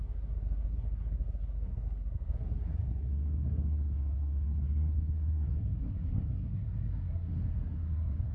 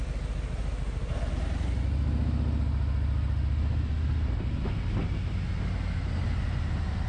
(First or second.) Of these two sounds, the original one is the second